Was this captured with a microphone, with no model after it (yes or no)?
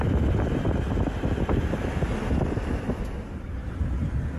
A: yes